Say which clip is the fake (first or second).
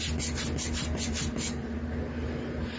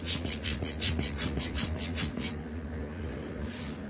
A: second